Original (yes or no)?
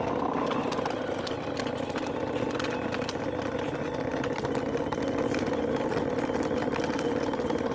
yes